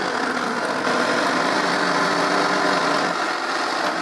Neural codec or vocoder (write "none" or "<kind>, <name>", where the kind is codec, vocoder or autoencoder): none